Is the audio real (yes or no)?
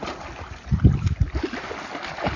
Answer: yes